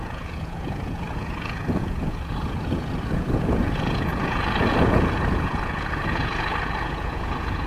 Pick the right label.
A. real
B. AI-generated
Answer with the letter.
B